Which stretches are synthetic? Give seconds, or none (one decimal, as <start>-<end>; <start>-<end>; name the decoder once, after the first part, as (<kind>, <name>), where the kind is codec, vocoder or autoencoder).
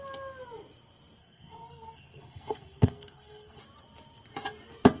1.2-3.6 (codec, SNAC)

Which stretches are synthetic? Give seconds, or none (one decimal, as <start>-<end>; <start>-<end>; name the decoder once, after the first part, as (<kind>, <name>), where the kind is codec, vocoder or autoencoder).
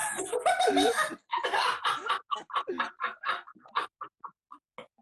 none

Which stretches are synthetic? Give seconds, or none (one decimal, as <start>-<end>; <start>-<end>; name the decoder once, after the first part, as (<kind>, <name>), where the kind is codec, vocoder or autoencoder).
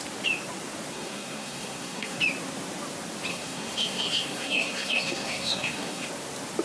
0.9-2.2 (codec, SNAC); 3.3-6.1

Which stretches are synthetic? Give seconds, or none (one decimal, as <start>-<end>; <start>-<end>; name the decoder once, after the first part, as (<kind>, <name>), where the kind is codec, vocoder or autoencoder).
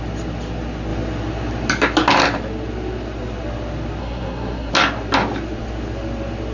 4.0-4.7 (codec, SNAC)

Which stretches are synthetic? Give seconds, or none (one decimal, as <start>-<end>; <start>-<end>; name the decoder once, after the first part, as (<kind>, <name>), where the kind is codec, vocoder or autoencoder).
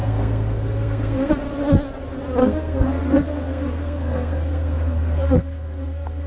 0.0-1.3 (codec, SNAC); 2.4-6.3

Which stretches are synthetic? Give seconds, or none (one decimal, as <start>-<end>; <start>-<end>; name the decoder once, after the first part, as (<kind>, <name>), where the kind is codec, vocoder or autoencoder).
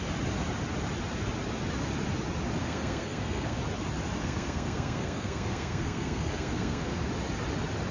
2.6-3.6 (codec, SNAC); 4.2-7.1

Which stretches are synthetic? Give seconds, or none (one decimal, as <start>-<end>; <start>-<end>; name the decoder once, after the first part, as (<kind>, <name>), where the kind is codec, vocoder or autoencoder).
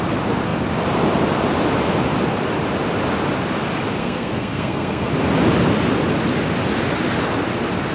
4.0-5.1 (codec, SNAC)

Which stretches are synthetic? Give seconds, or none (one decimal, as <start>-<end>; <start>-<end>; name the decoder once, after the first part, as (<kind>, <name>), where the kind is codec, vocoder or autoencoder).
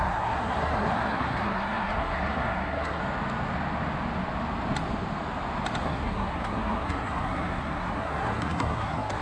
0.0-3.0 (codec, SNAC); 5.8-9.2